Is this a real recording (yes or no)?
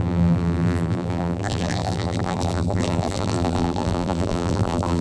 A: no